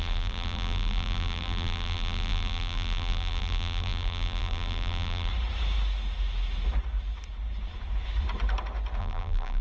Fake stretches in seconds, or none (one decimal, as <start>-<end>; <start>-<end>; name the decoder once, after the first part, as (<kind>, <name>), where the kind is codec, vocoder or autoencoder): 0.0-5.3 (vocoder, BigVGAN v2); 9.0-9.6